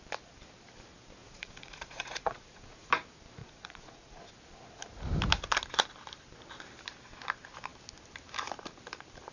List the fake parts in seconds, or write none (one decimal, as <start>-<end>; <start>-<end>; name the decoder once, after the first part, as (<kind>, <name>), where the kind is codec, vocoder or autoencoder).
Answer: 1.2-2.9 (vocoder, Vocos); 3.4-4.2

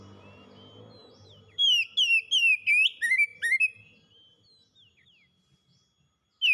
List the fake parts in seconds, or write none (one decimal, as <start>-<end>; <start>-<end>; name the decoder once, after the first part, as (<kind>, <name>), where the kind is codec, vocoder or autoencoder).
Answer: none

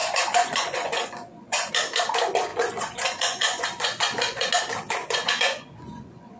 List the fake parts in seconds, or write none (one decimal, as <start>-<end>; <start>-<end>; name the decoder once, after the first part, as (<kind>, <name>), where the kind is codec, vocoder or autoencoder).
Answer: 0.0-1.7 (vocoder, Vocos); 2.5-4.5; 5.0-6.4